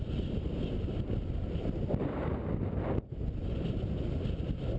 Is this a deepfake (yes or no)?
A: no